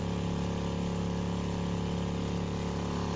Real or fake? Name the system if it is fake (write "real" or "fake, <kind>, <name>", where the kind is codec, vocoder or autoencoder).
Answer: real